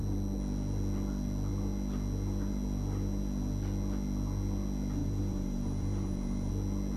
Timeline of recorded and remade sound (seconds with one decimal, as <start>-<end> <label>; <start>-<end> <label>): 0.0-5.0 recorded; 5.0-6.5 remade; 6.5-7.0 recorded